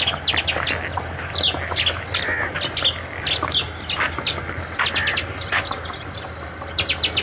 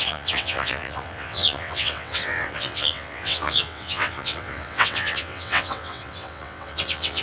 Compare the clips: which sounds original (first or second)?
first